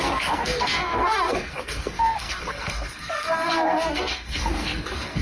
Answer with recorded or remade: remade